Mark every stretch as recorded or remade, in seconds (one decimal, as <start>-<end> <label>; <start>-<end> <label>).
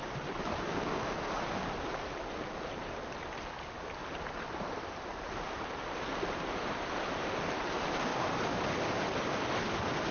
0.0-1.1 remade; 1.1-4.0 recorded; 4.0-7.0 remade; 7.0-8.1 recorded; 8.1-8.8 remade; 8.8-10.1 recorded